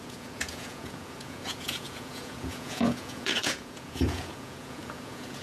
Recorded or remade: remade